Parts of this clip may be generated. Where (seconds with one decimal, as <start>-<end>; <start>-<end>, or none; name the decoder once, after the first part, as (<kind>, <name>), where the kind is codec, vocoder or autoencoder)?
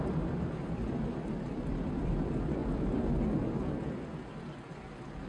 0.0-2.6 (vocoder, BigVGAN v2); 4.0-5.3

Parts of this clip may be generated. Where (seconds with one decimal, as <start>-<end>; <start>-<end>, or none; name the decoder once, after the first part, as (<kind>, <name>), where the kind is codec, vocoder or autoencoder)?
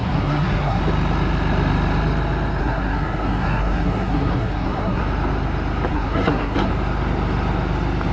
0.0-0.8 (codec, SNAC); 2.6-5.0; 5.9-6.7